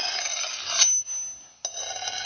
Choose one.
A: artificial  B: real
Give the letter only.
B